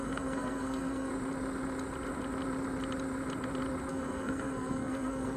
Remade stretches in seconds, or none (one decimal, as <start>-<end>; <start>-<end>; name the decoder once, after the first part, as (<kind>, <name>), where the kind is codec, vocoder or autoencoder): 0.0-1.1 (codec, SNAC); 3.9-5.4